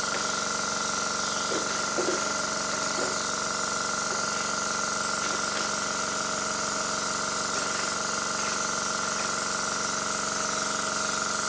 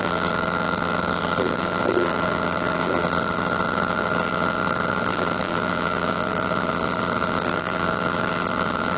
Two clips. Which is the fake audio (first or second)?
second